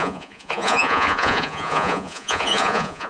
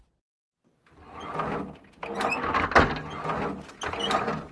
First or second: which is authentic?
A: second